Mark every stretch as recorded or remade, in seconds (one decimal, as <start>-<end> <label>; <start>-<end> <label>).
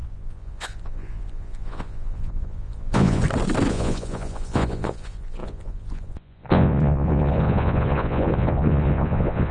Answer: 0.0-3.2 remade; 3.2-3.7 recorded; 3.7-9.5 remade